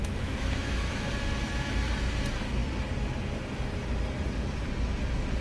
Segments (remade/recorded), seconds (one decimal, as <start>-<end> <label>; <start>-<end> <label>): 0.0-1.1 remade; 1.1-5.4 recorded